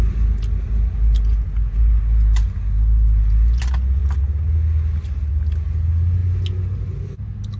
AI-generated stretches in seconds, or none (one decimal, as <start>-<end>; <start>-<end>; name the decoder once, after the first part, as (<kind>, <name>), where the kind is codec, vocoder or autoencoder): none